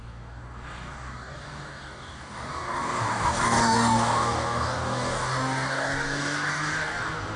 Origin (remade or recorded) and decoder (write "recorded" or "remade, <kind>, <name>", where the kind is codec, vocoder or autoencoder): remade, codec, DAC